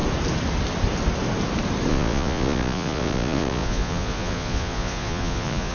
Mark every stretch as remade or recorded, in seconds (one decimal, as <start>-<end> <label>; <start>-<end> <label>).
0.0-1.9 recorded; 1.9-5.7 remade